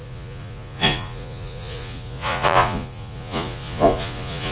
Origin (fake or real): fake